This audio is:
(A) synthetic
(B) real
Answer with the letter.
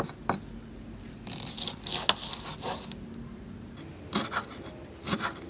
B